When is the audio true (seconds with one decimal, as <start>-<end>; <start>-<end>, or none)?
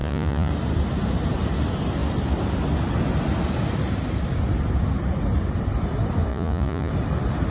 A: 0.5-6.3; 6.9-7.5